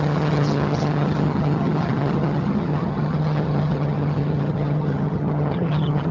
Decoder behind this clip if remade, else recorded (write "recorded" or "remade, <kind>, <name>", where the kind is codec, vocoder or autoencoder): remade, vocoder, HiFi-GAN